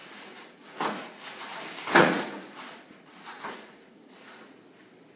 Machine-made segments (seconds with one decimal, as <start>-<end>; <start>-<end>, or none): 0.0-1.6; 2.0-4.5